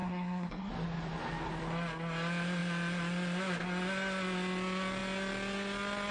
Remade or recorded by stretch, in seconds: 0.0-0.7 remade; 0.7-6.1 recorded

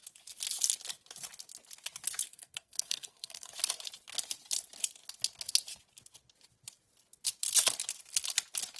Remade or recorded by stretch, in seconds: 0.0-2.3 recorded; 2.3-3.5 remade; 3.5-8.8 recorded

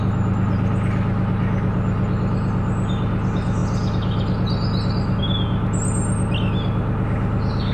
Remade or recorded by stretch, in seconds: 0.0-7.7 recorded

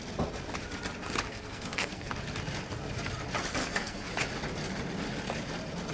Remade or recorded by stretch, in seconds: 0.0-1.3 recorded; 1.3-2.1 remade; 2.1-3.6 recorded; 3.6-4.1 remade; 4.1-5.9 recorded

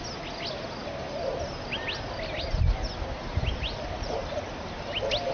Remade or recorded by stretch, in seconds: 0.0-5.3 recorded

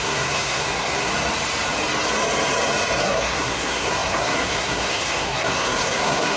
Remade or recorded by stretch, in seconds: 0.0-1.1 remade; 1.1-3.0 recorded; 3.0-6.4 remade